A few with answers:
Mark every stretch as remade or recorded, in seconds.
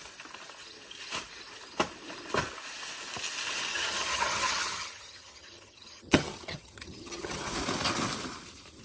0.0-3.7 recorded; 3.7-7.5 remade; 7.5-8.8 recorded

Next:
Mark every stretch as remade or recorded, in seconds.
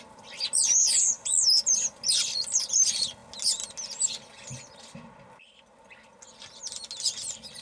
0.0-7.6 recorded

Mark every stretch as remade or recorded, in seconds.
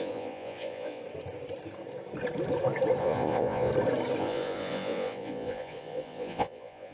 0.0-1.0 remade; 1.0-3.0 recorded; 3.0-3.7 remade; 3.7-4.2 recorded; 4.2-6.9 remade